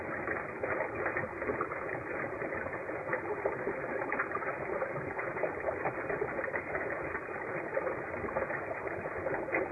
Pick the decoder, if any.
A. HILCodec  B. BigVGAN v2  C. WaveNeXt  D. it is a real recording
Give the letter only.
D